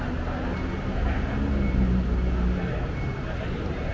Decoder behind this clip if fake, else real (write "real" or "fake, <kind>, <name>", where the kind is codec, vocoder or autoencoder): real